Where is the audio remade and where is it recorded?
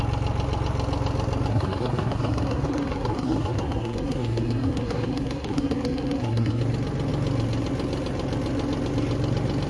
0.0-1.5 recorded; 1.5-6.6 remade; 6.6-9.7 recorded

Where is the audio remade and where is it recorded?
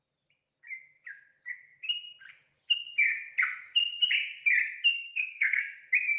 0.0-4.9 recorded; 4.9-5.6 remade; 5.6-6.2 recorded